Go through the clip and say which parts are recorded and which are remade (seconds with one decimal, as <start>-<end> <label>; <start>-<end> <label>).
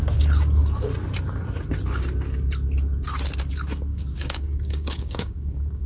0.0-3.9 recorded; 3.9-5.9 remade